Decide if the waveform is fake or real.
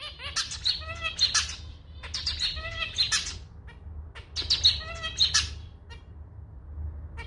real